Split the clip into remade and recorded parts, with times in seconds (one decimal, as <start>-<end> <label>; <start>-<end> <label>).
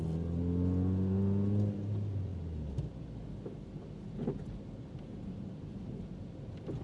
0.0-6.8 recorded